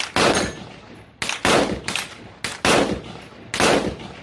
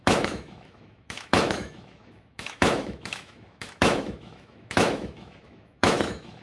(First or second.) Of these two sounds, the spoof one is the second